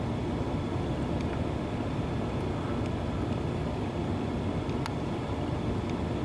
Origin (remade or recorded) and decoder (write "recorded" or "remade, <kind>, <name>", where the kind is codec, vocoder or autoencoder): recorded